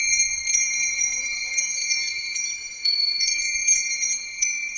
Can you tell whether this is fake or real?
fake